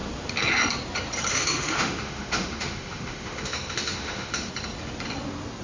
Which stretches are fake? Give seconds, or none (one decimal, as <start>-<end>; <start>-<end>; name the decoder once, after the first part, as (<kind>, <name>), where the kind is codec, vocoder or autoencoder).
1.3-4.5 (autoencoder, DAC-VAE)

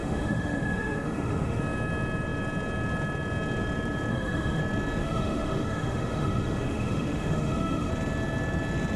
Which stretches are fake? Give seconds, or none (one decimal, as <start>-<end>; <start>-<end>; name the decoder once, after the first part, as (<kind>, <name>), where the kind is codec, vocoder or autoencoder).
0.0-1.6 (autoencoder, DAC-VAE); 4.1-4.6; 5.0-7.9

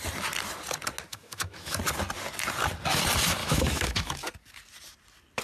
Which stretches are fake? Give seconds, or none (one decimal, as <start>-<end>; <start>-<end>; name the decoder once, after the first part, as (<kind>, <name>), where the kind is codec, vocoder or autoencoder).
1.1-1.8 (autoencoder, DAC-VAE); 3.4-4.3

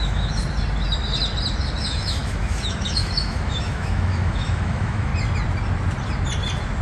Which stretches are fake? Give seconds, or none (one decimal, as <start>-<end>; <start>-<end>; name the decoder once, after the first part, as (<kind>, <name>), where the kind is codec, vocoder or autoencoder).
0.0-0.4 (autoencoder, DAC-VAE); 1.8-5.1